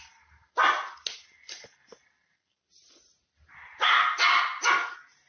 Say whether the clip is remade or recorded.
recorded